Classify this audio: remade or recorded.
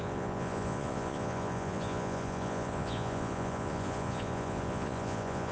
remade